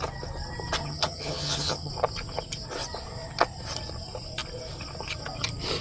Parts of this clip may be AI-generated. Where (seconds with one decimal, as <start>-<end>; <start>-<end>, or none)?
0.8-1.9

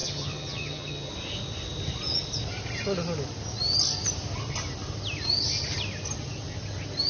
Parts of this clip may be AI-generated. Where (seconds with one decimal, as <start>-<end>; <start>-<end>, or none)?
0.0-1.1

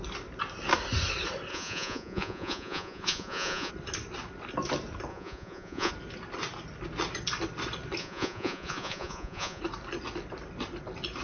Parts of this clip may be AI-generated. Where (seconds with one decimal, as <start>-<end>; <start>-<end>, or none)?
1.5-3.7; 5.1-5.9; 8.0-9.6

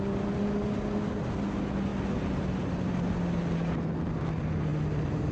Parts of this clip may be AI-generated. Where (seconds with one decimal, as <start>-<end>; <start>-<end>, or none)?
1.9-2.6

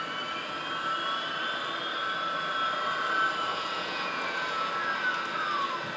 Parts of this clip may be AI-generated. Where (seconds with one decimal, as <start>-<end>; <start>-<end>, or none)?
3.5-4.7

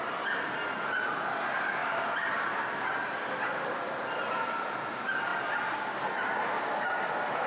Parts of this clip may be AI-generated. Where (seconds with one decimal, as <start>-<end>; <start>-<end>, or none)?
1.8-2.6

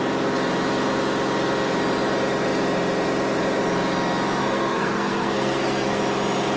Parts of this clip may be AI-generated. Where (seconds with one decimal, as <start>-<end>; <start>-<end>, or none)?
4.4-6.0